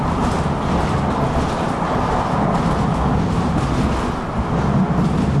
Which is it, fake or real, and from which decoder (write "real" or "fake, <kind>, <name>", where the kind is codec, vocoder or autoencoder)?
real